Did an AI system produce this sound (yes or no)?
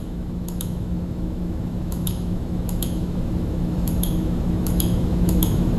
yes